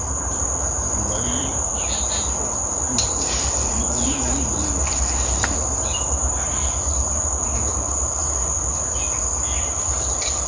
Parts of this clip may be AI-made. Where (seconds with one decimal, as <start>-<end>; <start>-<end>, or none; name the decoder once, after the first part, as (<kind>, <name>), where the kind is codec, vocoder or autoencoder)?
0.0-1.7 (vocoder, BigVGAN v2); 2.5-8.2; 9.6-10.5